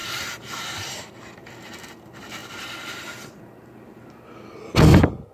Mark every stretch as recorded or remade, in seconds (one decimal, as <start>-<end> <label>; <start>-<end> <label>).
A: 0.0-1.1 remade; 1.1-5.3 recorded